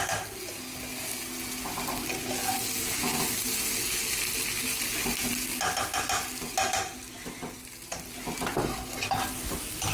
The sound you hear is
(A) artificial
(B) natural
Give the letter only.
B